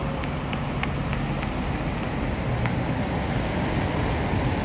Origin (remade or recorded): recorded